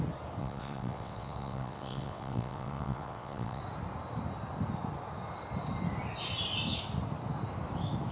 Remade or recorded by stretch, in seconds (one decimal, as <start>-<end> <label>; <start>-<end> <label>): 0.0-0.4 recorded; 0.4-3.6 remade; 3.6-8.1 recorded